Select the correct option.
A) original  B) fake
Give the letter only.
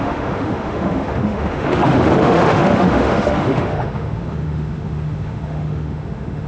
B